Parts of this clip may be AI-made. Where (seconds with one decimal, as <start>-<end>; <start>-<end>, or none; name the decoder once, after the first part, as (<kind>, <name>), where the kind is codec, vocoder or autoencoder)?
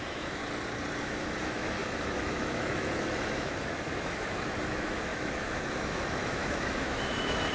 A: 0.0-0.4 (autoencoder, DAC-VAE); 1.0-7.5